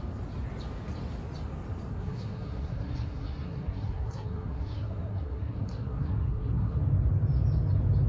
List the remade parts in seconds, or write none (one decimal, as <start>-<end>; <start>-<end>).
1.9-6.8